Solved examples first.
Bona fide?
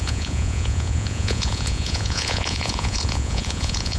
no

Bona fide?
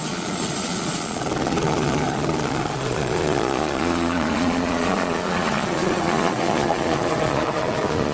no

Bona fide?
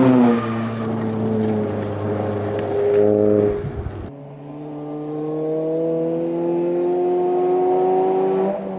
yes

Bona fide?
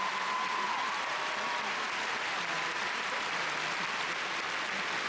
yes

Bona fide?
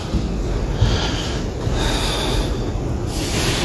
yes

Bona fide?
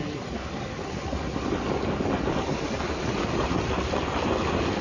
yes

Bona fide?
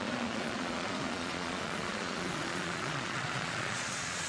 no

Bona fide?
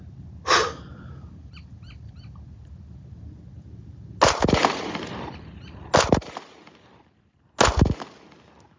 yes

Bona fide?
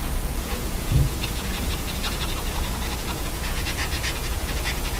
no